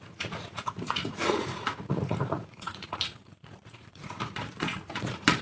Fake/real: fake